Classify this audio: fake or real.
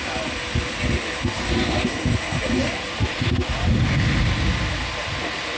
real